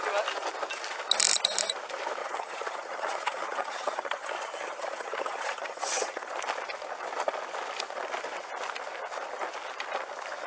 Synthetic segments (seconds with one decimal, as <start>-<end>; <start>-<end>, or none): 2.2-6.3